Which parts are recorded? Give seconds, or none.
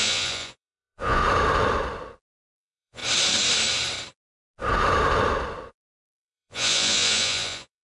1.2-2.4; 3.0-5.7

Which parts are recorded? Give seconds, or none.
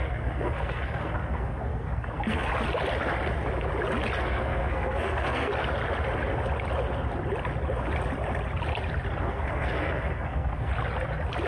2.5-4.2; 5.5-9.2; 10.7-11.5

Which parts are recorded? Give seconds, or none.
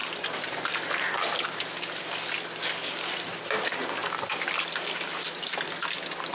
0.0-6.3